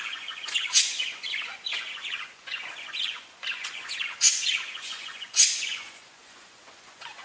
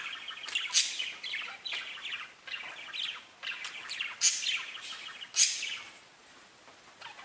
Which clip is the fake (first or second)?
first